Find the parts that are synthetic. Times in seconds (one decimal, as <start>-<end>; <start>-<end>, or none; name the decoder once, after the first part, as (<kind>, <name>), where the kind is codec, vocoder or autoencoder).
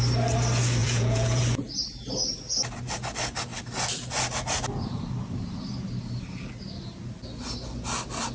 0.8-1.4 (vocoder, Vocos)